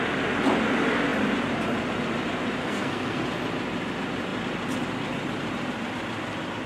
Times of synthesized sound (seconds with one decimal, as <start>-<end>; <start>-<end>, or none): 2.6-3.2